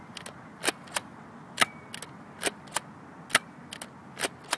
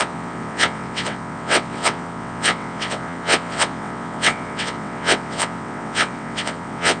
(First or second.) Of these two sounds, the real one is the first